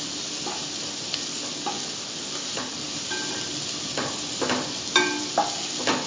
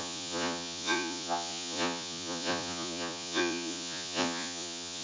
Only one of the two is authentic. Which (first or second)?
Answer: first